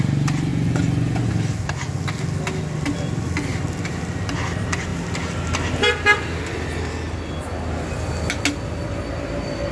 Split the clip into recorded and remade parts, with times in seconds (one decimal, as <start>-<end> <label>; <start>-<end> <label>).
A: 0.0-0.5 recorded; 0.5-1.3 remade; 1.3-9.7 recorded